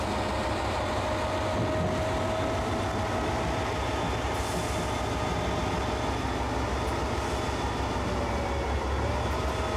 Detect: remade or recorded recorded